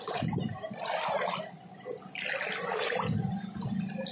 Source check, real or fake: real